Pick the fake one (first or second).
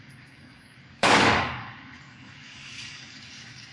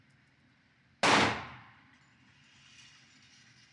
first